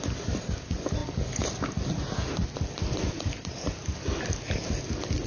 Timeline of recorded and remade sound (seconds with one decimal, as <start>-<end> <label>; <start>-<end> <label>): 0.0-5.3 recorded